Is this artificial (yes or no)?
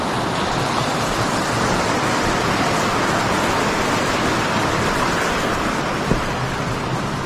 no